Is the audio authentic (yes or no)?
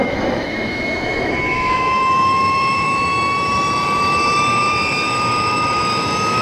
no